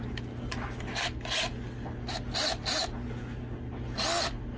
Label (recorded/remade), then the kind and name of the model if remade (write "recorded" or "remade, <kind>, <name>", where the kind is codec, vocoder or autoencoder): recorded